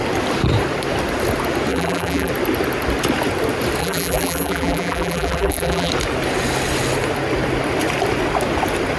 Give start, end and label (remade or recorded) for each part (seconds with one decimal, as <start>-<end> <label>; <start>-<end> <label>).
0.0-1.7 recorded; 1.7-2.3 remade; 2.3-3.8 recorded; 3.8-5.9 remade; 5.9-9.0 recorded